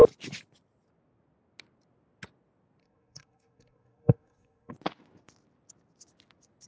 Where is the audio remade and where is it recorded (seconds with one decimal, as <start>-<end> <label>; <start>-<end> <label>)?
0.0-2.8 recorded; 2.8-4.7 remade; 4.7-6.7 recorded